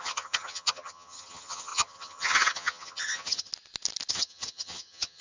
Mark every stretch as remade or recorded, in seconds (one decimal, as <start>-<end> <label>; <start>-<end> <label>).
0.0-3.5 remade; 3.5-4.1 recorded; 4.1-5.2 remade